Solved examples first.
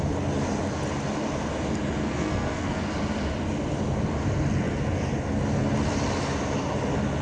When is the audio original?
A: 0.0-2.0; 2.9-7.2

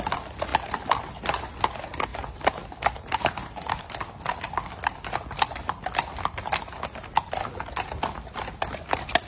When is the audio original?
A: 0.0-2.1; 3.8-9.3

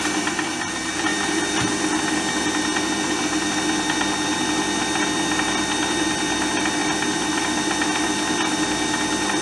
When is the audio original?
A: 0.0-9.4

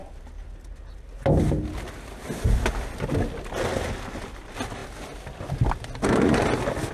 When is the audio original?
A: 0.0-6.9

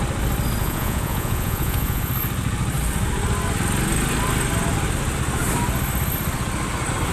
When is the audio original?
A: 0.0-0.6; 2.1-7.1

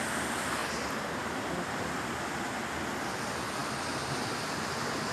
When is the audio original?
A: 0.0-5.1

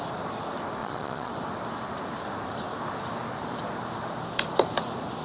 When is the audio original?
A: 0.0-0.8; 1.3-5.2